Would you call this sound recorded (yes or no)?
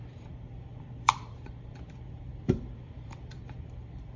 no